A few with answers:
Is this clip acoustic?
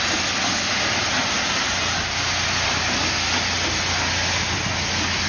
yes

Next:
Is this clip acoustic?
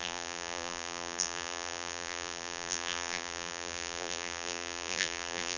no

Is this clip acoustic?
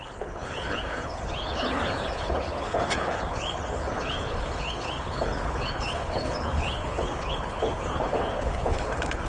no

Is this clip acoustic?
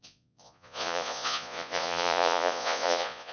no